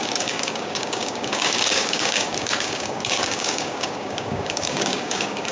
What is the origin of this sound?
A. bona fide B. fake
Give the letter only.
B